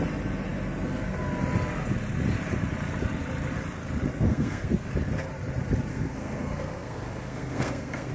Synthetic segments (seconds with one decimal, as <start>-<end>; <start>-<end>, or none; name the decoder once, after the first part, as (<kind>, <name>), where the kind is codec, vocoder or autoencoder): 4.1-4.9 (codec, SNAC); 5.9-8.1